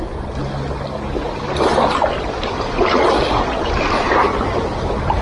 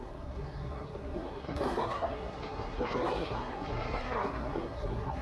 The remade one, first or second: second